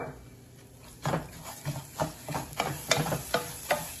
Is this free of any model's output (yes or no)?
yes